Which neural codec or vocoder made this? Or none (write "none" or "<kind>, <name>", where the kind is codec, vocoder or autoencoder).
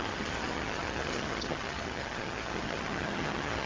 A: vocoder, HiFi-GAN